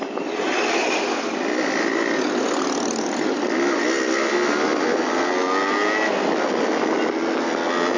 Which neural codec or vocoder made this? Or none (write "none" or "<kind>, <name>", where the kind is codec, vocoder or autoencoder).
none